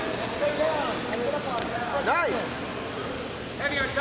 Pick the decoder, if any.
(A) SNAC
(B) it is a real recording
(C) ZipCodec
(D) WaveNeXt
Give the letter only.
B